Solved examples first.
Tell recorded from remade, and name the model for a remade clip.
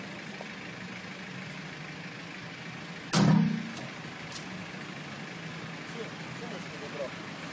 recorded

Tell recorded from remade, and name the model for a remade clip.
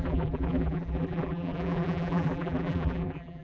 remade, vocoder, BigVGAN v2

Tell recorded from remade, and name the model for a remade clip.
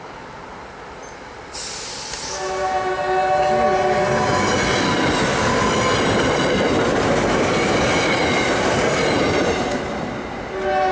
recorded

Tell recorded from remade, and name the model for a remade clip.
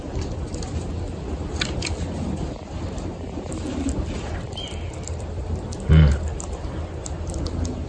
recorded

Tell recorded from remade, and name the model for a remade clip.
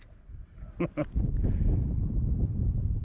recorded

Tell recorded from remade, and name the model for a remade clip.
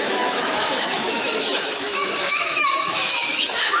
remade, autoencoder, DAC-VAE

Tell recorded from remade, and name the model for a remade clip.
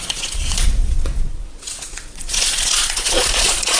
remade, vocoder, Vocos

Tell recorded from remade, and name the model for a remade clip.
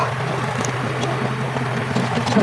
recorded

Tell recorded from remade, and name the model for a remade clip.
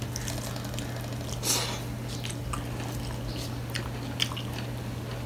recorded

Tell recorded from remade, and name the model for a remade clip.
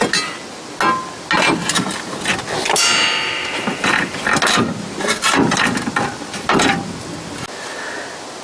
recorded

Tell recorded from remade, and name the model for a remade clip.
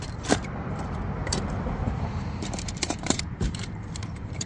remade, vocoder, BigVGAN v2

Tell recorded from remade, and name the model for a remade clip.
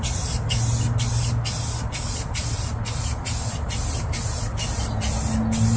recorded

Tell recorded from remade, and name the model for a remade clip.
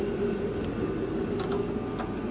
recorded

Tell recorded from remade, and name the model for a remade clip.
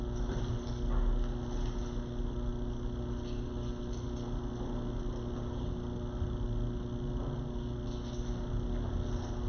recorded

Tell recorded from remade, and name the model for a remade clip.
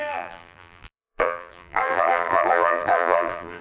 remade, vocoder, BigVGAN v2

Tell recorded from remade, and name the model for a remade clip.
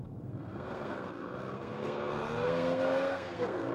remade, codec, SNAC